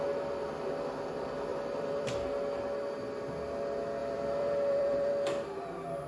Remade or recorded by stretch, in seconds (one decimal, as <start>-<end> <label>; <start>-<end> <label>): 0.0-1.5 recorded; 1.5-2.1 remade; 2.1-4.0 recorded; 4.0-5.1 remade; 5.1-6.1 recorded